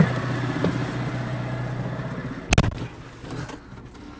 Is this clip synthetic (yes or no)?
no